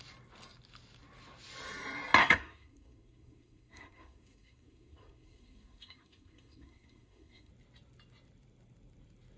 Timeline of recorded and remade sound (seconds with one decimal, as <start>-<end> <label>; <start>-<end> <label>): 0.0-2.2 recorded; 2.2-7.5 remade; 7.5-9.4 recorded